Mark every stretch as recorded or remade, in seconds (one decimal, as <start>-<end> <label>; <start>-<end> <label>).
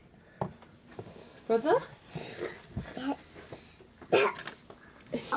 0.0-4.4 recorded; 4.4-5.4 remade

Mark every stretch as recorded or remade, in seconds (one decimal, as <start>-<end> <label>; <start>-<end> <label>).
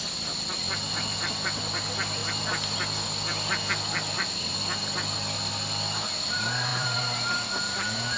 0.0-6.7 recorded; 6.7-8.2 remade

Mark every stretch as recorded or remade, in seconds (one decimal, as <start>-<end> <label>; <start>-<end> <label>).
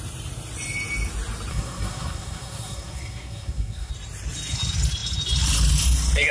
0.0-1.5 recorded; 1.5-3.9 remade; 3.9-6.3 recorded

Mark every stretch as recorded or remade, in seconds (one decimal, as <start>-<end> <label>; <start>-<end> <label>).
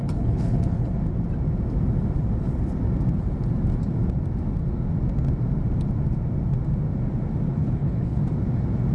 0.0-0.9 remade; 0.9-7.5 recorded; 7.5-8.2 remade; 8.2-8.9 recorded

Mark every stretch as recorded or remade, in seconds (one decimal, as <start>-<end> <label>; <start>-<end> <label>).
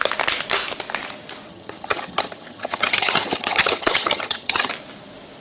0.0-1.5 recorded; 1.5-4.7 remade; 4.7-5.4 recorded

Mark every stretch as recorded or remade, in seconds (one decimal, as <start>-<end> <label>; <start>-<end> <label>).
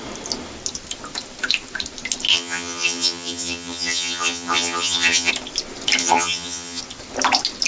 0.0-2.3 recorded; 2.3-5.3 remade; 5.3-6.0 recorded; 6.0-6.8 remade; 6.8-7.7 recorded